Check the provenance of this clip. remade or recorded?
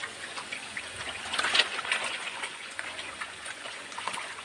remade